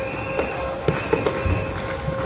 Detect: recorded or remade recorded